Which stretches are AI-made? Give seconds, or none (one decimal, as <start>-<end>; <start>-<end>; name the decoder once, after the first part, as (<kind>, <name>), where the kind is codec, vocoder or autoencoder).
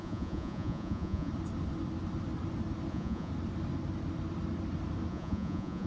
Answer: 0.0-1.3 (vocoder, Vocos); 2.9-3.3; 5.1-5.9